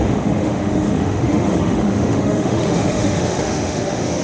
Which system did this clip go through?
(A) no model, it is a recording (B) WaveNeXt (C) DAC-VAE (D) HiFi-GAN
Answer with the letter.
C